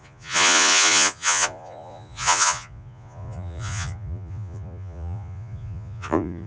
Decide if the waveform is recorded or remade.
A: remade